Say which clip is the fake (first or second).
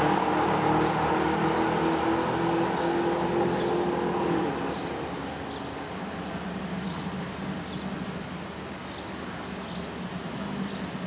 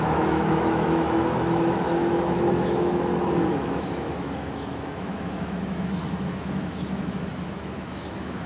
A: second